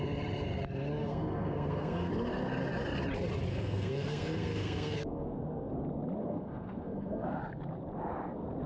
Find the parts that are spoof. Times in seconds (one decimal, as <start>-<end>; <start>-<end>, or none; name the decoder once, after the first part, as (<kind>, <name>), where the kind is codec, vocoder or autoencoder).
1.0-2.1 (codec, SNAC); 3.5-5.7; 6.2-7.4